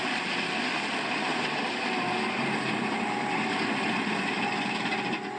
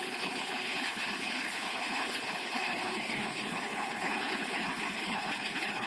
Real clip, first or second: first